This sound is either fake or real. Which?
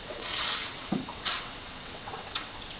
fake